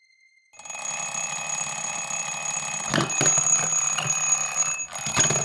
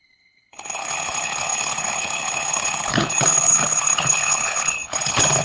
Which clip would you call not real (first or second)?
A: second